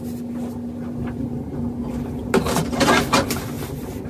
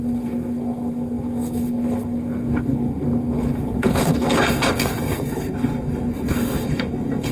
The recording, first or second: first